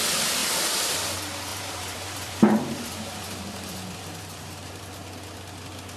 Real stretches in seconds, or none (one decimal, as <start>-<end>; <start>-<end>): 0.0-0.4; 0.9-1.5; 4.8-6.0